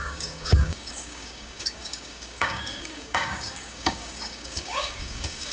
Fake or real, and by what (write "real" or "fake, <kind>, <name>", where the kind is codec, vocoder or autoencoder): fake, codec, DAC